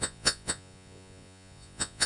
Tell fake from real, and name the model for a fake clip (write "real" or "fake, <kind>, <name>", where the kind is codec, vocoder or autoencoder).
fake, vocoder, Vocos